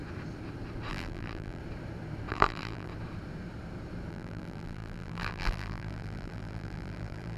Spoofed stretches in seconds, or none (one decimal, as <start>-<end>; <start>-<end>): 0.9-1.6; 2.3-2.9; 4.1-7.4